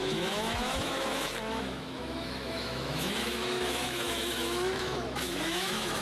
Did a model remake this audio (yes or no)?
yes